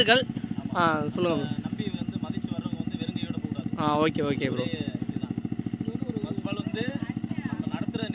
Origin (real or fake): real